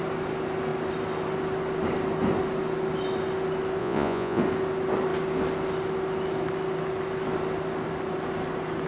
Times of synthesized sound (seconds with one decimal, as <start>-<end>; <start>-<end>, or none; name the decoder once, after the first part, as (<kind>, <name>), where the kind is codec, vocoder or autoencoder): 3.8-4.4 (vocoder, Vocos)